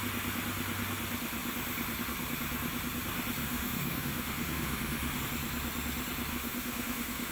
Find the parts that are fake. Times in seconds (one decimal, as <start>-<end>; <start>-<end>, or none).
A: 3.4-5.2; 6.3-7.3

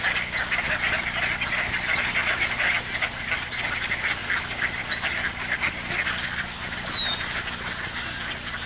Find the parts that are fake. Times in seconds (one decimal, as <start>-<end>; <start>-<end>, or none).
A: none

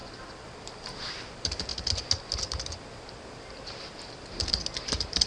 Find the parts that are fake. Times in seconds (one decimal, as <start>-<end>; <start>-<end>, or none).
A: 0.6-1.7